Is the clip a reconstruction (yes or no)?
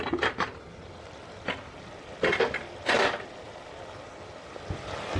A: no